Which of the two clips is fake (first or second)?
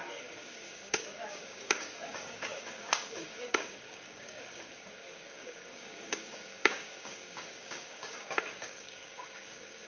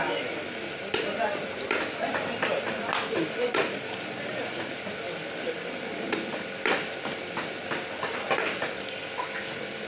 first